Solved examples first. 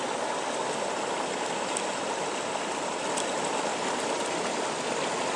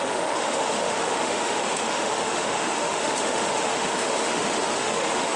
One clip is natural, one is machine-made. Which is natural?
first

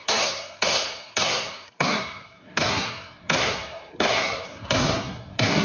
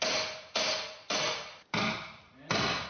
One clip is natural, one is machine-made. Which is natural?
second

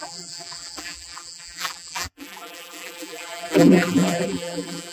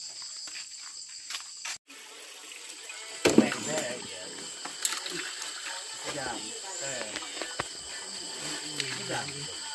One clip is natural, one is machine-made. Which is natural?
second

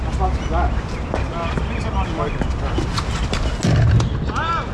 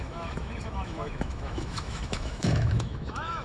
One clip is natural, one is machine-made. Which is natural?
first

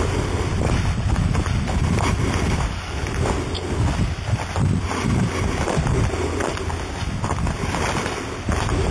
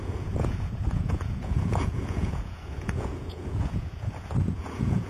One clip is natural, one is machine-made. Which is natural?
first